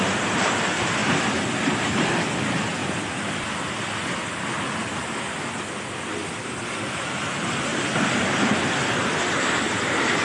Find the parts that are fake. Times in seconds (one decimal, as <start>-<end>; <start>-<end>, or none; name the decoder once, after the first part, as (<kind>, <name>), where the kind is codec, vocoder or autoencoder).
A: none